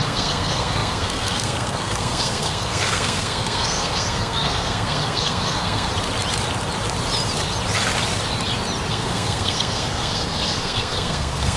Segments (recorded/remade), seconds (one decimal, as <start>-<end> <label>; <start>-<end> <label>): 0.0-5.9 remade; 5.9-8.9 recorded; 8.9-11.6 remade